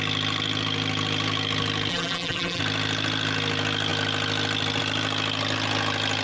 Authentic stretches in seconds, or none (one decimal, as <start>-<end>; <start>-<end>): 0.0-1.9; 2.6-6.2